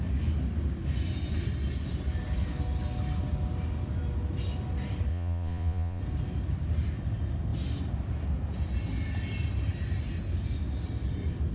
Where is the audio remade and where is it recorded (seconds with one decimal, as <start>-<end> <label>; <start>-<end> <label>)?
0.0-5.1 recorded; 5.1-6.0 remade; 6.0-11.5 recorded